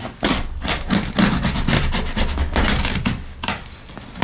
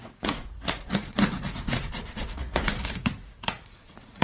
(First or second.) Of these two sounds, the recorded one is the first